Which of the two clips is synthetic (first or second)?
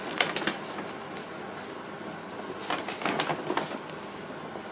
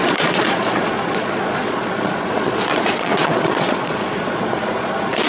second